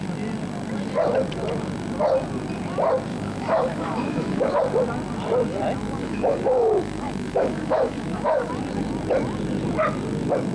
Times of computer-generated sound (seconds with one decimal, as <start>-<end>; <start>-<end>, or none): 3.1-4.6; 5.8-8.5